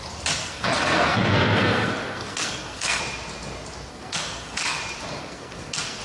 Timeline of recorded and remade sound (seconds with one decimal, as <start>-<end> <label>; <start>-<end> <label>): 0.0-0.4 recorded; 0.4-3.0 remade; 3.0-3.9 recorded; 3.9-4.8 remade; 4.8-5.2 recorded; 5.2-6.0 remade